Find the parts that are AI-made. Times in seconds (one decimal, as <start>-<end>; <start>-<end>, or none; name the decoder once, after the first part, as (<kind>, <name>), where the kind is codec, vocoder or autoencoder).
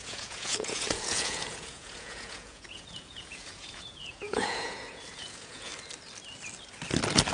0.0-5.7 (vocoder, Vocos)